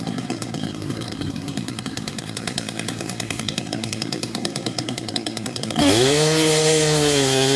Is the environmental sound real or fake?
fake